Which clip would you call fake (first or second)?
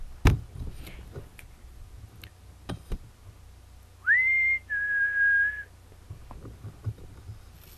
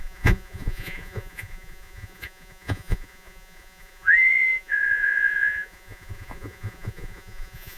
second